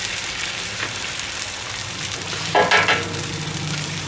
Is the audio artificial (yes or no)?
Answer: no